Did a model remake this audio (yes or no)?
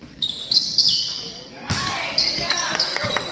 yes